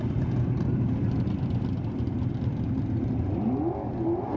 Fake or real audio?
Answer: fake